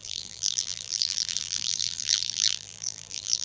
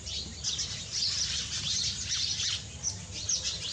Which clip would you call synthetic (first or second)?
first